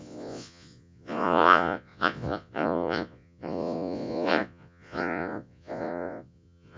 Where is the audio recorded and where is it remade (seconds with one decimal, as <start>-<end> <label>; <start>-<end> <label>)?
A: 0.0-6.8 remade